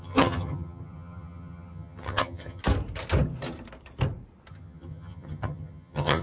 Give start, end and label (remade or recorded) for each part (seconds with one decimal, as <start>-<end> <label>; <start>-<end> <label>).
0.0-2.6 remade; 2.6-4.5 recorded; 4.5-6.2 remade